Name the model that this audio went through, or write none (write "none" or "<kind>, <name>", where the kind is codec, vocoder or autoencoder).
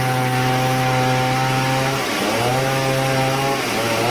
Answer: none